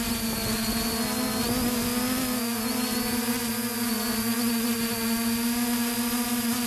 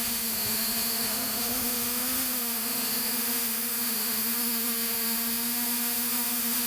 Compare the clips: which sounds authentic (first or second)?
first